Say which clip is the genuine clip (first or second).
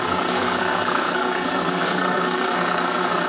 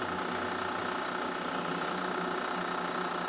second